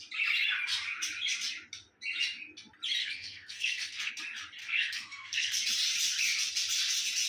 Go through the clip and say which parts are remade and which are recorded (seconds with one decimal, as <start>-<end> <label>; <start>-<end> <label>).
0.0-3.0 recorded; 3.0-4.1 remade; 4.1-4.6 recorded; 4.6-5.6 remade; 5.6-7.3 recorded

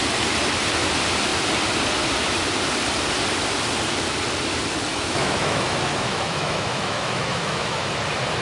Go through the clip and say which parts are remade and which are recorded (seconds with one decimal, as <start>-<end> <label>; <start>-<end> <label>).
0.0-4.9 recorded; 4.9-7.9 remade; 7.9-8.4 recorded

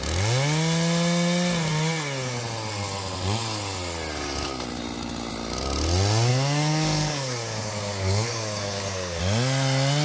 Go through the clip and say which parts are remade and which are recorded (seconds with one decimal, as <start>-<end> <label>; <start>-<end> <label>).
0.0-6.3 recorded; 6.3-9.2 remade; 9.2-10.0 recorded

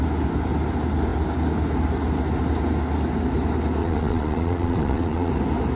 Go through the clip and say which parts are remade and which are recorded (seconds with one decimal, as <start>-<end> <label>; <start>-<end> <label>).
0.0-3.8 recorded; 3.8-5.3 remade; 5.3-5.8 recorded

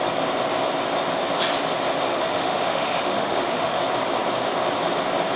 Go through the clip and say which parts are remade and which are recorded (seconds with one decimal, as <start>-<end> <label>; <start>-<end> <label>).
0.0-2.1 recorded; 2.1-3.8 remade; 3.8-5.4 recorded

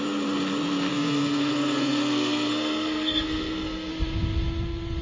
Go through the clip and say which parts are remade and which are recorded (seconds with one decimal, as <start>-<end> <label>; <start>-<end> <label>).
0.0-0.9 recorded; 0.9-3.9 remade; 3.9-5.0 recorded

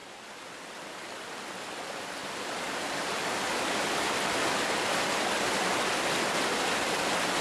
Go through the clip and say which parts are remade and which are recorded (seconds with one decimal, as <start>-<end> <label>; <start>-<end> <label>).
0.0-0.8 remade; 0.8-2.2 recorded; 2.2-5.7 remade; 5.7-7.4 recorded